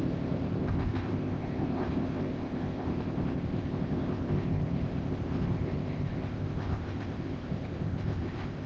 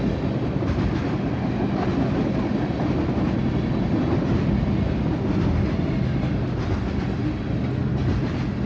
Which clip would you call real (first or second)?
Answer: second